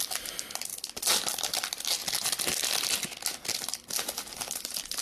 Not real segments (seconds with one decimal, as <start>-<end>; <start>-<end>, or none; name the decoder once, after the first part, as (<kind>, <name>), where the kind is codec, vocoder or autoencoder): none

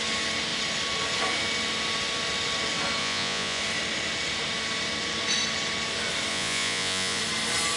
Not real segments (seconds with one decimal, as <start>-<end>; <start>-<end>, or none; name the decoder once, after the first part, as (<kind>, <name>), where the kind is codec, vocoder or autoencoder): 3.0-3.6 (vocoder, Vocos); 6.3-7.2

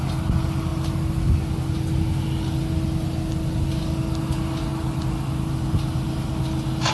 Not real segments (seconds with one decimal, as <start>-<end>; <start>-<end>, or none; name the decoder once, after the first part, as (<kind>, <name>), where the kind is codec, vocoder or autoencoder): 0.7-3.8 (vocoder, BigVGAN v2)

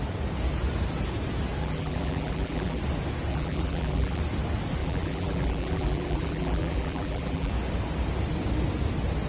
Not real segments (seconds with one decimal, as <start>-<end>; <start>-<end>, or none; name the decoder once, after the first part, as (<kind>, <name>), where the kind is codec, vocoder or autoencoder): 1.6-2.8 (vocoder, BigVGAN v2); 3.3-4.2; 4.8-7.5

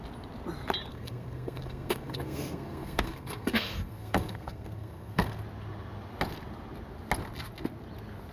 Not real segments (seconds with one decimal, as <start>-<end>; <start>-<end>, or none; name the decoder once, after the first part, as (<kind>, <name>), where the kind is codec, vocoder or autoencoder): 0.9-5.4 (codec, SNAC)

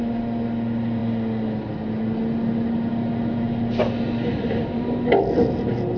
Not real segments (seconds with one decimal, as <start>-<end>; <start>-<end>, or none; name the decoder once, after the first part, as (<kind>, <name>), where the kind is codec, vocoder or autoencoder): none

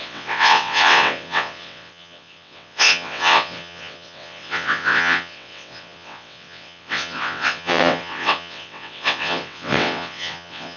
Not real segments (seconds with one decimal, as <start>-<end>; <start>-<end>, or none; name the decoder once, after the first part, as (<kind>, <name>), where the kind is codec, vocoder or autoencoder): 0.0-10.8 (vocoder, WaveNeXt)